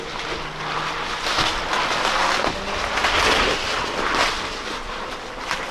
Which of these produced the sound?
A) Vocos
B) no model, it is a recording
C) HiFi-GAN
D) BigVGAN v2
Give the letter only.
B